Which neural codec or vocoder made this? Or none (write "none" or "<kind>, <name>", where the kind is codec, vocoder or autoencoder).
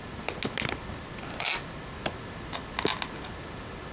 none